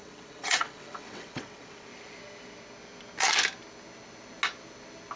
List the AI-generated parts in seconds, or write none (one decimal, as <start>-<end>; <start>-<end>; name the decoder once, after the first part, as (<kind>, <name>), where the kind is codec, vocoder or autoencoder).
0.0-1.9 (vocoder, WaveNeXt)